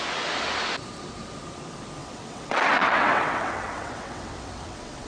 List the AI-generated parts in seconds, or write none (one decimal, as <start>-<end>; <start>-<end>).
2.0-5.1